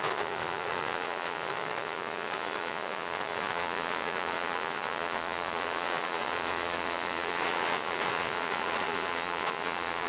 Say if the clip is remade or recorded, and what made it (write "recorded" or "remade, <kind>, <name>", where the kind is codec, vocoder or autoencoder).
remade, vocoder, Vocos